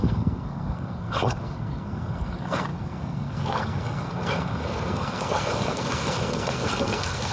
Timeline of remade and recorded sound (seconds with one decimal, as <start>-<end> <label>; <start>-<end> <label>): 0.0-7.3 remade